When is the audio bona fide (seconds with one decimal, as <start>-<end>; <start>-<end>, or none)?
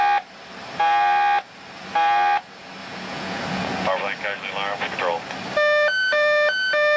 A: 0.0-2.8; 3.9-7.0